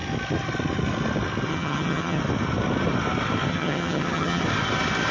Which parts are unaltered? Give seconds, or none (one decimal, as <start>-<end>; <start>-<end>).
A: 0.0-1.5; 2.2-3.5; 4.4-5.1

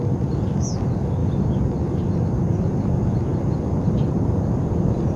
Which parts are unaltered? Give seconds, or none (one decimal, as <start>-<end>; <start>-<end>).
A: 0.0-5.2

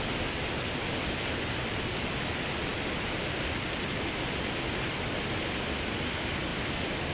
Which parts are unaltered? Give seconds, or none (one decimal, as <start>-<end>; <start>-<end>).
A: 0.0-7.1

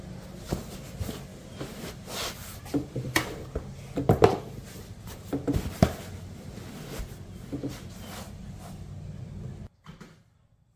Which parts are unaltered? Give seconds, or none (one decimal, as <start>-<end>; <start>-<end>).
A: 0.0-1.3; 2.6-10.8

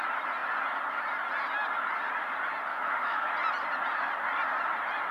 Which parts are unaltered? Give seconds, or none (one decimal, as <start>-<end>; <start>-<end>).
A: 0.0-2.7; 3.3-5.1